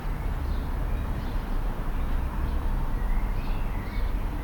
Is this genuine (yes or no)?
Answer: yes